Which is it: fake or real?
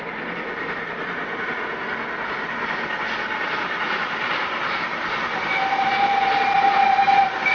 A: real